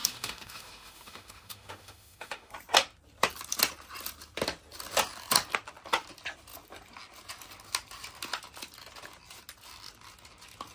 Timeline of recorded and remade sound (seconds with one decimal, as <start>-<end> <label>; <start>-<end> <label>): 0.0-2.5 remade; 2.5-10.7 recorded

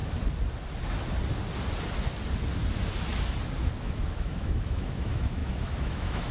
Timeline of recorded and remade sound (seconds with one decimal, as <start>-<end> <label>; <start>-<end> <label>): 0.0-3.8 recorded; 3.8-6.3 remade

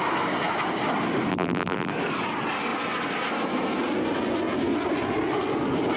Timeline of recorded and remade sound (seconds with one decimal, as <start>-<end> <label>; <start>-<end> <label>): 0.0-1.3 recorded; 1.3-1.9 remade; 1.9-6.0 recorded

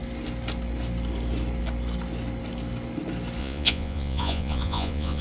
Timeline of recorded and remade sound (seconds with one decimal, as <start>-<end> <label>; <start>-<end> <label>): 0.0-3.4 recorded; 3.4-5.2 remade

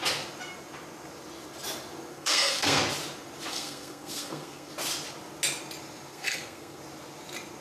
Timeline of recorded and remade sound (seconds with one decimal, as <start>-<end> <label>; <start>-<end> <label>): 0.0-2.1 recorded; 2.1-2.8 remade; 2.8-3.5 recorded; 3.5-4.7 remade; 4.7-6.1 recorded; 6.1-6.8 remade; 6.8-7.6 recorded

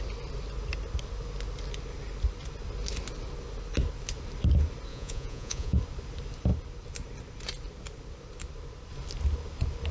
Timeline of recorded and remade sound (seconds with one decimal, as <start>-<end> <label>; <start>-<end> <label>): 0.0-4.9 recorded; 4.9-5.8 remade; 5.8-9.9 recorded

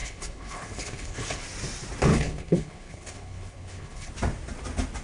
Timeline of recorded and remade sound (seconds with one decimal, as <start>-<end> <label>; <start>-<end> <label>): 0.0-1.4 remade; 1.4-2.1 recorded; 2.1-4.1 remade; 4.1-5.0 recorded

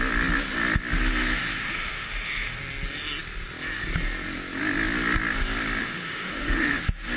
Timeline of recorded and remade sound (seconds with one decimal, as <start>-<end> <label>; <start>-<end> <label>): 0.0-1.6 recorded; 1.6-2.6 remade; 2.6-5.8 recorded; 5.8-6.8 remade; 6.8-7.2 recorded